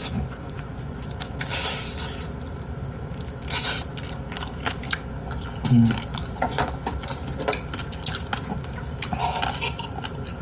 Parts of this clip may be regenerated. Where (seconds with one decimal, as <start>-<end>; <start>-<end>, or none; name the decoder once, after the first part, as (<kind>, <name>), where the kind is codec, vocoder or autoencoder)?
0.0-1.3 (vocoder, Vocos); 6.1-6.6